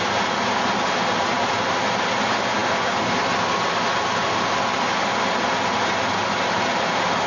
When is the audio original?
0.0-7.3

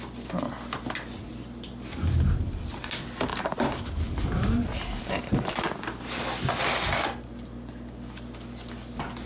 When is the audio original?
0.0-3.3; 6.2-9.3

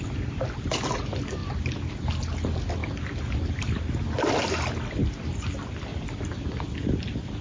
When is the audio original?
0.0-7.4

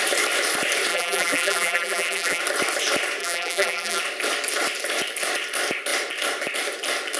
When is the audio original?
0.0-0.9; 2.4-3.2; 4.0-7.2